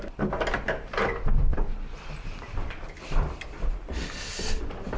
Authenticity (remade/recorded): recorded